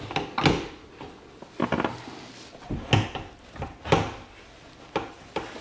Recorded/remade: recorded